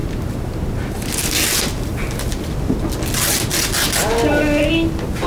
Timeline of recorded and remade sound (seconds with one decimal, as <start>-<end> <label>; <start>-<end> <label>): 0.0-5.3 recorded